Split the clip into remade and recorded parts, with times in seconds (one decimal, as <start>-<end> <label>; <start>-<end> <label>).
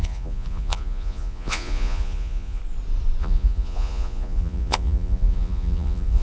0.0-2.6 remade; 2.6-3.2 recorded; 3.2-6.2 remade